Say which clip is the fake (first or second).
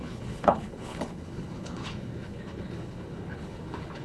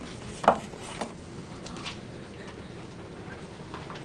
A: first